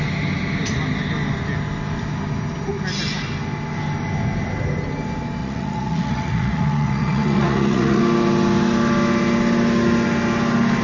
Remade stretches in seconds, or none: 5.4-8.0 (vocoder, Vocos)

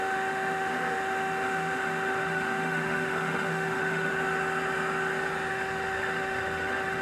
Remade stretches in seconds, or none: 0.0-4.1 (autoencoder, DAC-VAE); 5.5-7.0